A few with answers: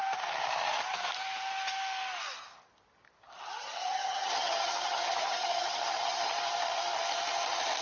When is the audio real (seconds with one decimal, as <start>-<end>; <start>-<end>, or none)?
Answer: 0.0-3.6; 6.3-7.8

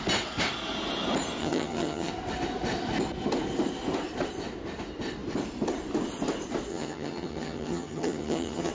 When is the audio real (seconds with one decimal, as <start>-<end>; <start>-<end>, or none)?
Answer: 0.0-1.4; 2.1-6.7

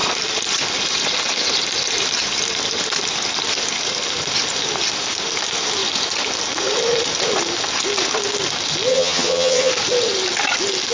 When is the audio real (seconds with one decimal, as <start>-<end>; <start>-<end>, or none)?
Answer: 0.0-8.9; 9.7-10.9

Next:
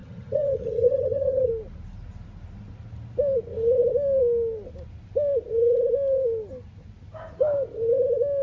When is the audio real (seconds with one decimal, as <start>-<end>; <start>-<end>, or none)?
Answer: 1.5-8.4

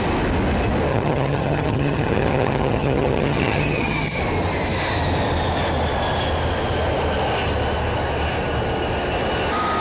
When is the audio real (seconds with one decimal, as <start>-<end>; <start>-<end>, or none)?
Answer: 0.0-0.9; 4.2-9.8

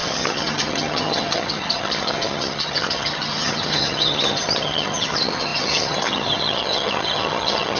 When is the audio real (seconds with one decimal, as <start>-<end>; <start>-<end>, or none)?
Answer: none